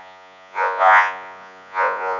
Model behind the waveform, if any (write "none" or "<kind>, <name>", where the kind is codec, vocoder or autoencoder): vocoder, Vocos